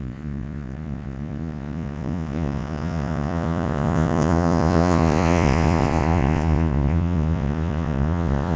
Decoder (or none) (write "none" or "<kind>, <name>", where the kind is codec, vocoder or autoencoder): vocoder, Vocos